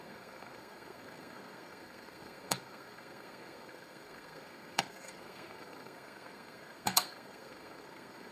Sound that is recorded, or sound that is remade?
remade